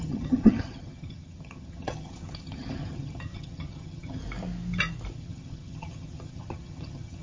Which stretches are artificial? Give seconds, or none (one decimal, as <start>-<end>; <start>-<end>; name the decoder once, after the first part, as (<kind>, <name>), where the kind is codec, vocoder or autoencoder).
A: 0.0-4.2 (vocoder, HiFi-GAN); 5.1-7.2